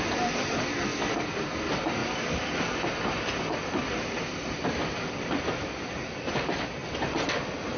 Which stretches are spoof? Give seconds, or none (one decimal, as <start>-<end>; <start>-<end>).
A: none